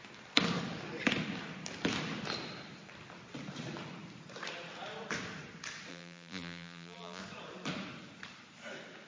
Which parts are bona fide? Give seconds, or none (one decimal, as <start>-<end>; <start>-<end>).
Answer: 0.0-5.9; 7.2-9.1